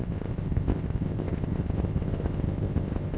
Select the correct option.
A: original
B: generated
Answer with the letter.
B